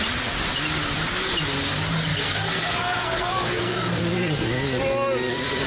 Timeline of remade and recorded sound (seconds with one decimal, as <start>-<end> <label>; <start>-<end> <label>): 0.0-2.1 recorded; 2.1-4.0 remade; 4.0-5.7 recorded